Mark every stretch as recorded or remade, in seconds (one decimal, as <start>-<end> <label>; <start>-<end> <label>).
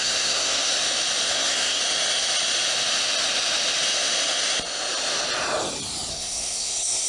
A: 0.0-0.7 remade; 0.7-1.3 recorded; 1.3-1.8 remade; 1.8-6.1 recorded; 6.1-7.1 remade